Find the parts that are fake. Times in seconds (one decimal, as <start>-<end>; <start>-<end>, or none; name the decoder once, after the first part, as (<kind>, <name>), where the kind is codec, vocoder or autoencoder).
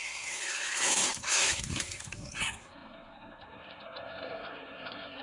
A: 0.0-5.2 (codec, SNAC)